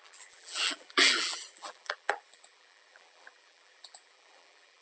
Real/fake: fake